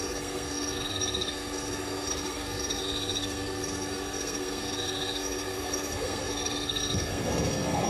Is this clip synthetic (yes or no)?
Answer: yes